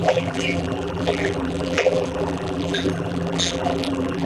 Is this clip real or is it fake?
fake